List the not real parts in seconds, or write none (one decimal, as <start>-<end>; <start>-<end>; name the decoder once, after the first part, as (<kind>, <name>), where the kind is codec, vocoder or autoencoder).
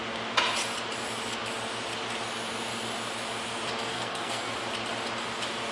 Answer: 3.9-4.5 (codec, SNAC)